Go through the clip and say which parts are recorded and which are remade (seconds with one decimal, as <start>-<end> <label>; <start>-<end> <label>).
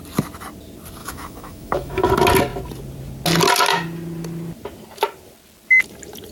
0.0-1.0 recorded; 1.0-2.1 remade; 2.1-6.3 recorded